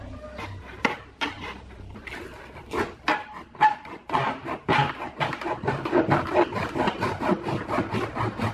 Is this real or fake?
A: real